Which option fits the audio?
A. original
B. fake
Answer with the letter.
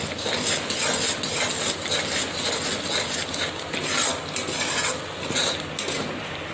A